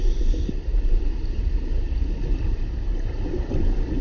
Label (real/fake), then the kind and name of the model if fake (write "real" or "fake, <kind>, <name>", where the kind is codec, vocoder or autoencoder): fake, vocoder, BigVGAN v2